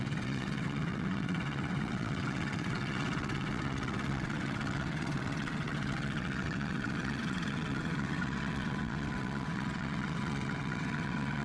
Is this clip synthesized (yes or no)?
yes